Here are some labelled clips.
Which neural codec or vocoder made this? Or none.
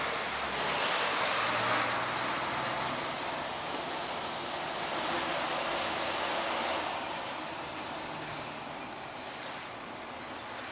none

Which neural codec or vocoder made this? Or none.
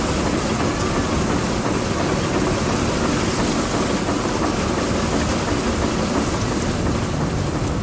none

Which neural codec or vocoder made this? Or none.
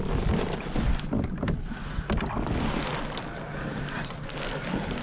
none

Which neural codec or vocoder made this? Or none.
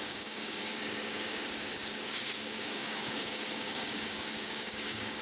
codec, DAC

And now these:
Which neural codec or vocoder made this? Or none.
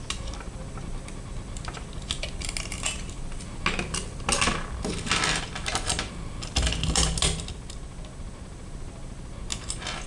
none